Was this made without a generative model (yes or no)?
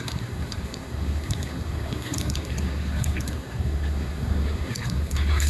no